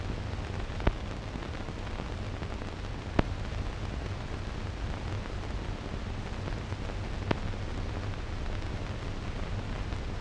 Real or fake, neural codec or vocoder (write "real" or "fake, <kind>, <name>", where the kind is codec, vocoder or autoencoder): real